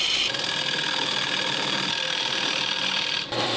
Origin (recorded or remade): remade